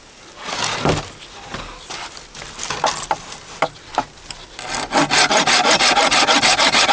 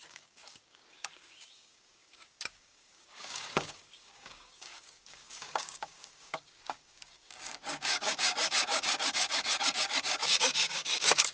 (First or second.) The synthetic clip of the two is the second